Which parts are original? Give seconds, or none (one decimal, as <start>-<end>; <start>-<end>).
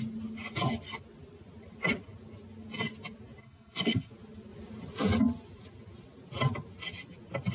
0.0-3.4; 4.1-7.5